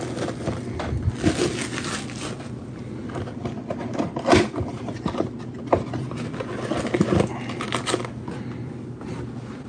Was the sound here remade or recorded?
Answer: recorded